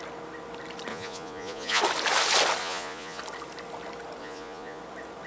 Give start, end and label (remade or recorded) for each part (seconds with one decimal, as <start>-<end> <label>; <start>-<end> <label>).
0.0-0.9 recorded; 0.9-1.8 remade; 1.8-2.6 recorded; 2.6-3.2 remade; 3.2-4.2 recorded; 4.2-4.8 remade; 4.8-5.3 recorded